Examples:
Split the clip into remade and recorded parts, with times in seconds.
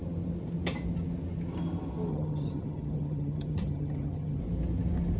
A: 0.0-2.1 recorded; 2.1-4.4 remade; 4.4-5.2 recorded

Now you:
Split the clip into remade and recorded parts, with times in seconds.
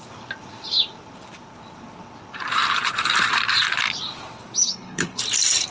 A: 0.0-4.6 recorded; 4.6-5.2 remade; 5.2-5.7 recorded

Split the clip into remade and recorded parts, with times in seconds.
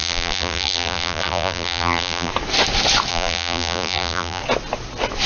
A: 0.0-2.3 remade; 2.3-3.1 recorded; 3.1-4.4 remade; 4.4-5.3 recorded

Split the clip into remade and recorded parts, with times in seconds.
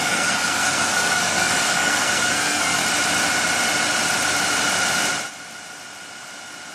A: 0.0-2.8 remade; 2.8-6.7 recorded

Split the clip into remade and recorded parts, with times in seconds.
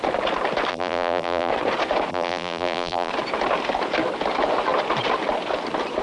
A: 0.0-0.7 recorded; 0.7-1.5 remade; 1.5-2.1 recorded; 2.1-3.1 remade; 3.1-6.0 recorded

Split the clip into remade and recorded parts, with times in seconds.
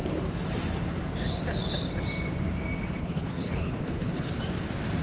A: 0.0-3.0 recorded; 3.0-4.3 remade; 4.3-5.0 recorded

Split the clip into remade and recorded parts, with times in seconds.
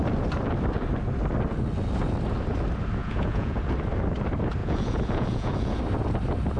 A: 0.0-3.0 recorded; 3.0-3.6 remade; 3.6-4.6 recorded; 4.6-5.8 remade; 5.8-6.6 recorded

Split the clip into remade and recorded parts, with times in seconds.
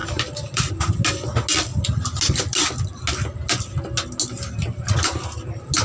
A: 0.0-0.7 remade; 0.7-5.8 recorded